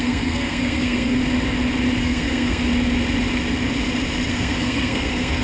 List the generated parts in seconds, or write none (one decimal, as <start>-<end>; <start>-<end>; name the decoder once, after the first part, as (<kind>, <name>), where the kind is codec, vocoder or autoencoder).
0.0-1.2 (codec, SNAC); 2.0-2.6; 4.3-5.4